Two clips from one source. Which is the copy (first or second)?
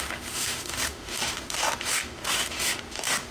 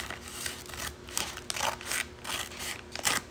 first